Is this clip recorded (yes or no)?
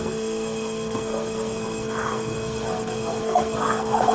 no